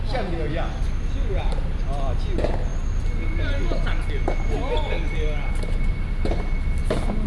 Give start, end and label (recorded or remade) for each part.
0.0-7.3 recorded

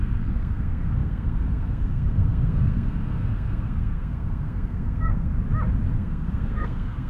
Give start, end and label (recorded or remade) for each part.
0.0-5.3 remade; 5.3-5.9 recorded; 5.9-7.1 remade

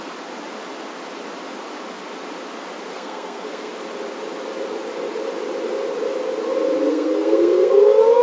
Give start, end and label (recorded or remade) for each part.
0.0-2.9 recorded; 2.9-3.7 remade; 3.7-6.9 recorded; 6.9-7.7 remade; 7.7-8.2 recorded

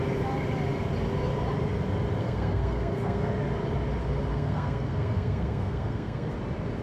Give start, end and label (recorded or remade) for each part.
0.0-2.2 recorded; 2.2-3.3 remade; 3.3-4.3 recorded; 4.3-6.3 remade; 6.3-6.8 recorded

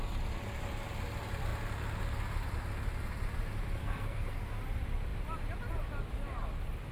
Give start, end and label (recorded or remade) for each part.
0.0-3.8 recorded; 3.8-4.5 remade; 4.5-6.9 recorded

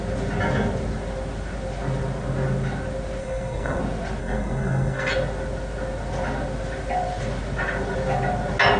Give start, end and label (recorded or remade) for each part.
0.0-3.2 recorded; 3.2-3.8 remade; 3.8-4.2 recorded; 4.2-5.1 remade; 5.1-8.8 recorded

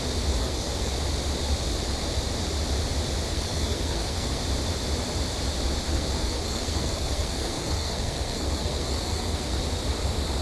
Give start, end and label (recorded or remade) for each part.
0.0-0.4 recorded; 0.4-0.9 remade; 0.9-3.3 recorded; 3.3-4.4 remade; 4.4-5.9 recorded; 5.9-9.6 remade; 9.6-10.4 recorded